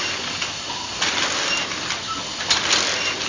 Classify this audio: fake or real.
real